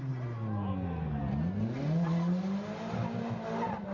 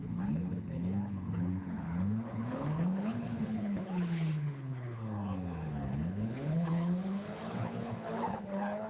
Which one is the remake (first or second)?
second